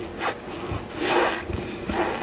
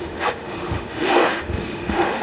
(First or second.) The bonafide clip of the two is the first